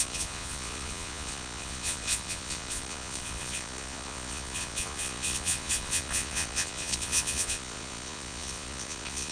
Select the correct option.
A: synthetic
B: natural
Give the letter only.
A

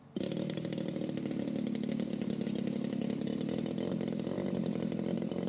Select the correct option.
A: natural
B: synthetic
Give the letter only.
A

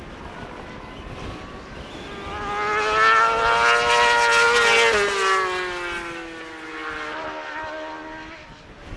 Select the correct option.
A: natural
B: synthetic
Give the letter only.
A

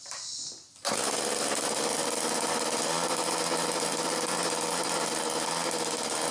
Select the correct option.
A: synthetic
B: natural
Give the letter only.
B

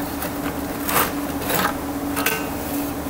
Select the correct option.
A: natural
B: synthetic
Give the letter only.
A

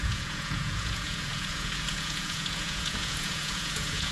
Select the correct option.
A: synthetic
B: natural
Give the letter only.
A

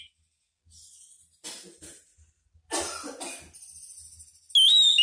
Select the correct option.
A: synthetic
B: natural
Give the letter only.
B